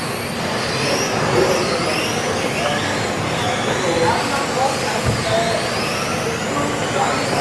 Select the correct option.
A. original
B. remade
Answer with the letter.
A